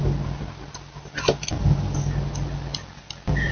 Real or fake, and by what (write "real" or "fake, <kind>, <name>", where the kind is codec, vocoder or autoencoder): real